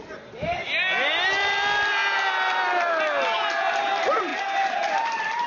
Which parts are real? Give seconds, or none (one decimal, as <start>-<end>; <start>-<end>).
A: 0.0-5.5